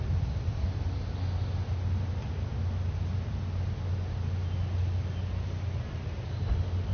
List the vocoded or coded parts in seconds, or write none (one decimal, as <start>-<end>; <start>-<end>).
none